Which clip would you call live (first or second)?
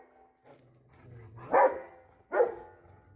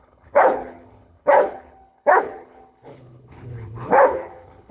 first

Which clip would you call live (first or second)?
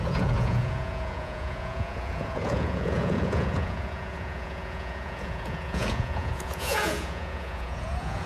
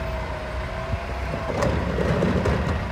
second